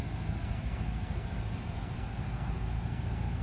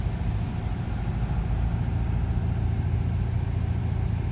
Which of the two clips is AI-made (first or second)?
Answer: first